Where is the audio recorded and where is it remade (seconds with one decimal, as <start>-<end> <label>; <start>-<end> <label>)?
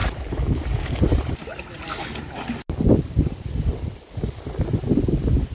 0.0-1.0 remade; 1.0-5.5 recorded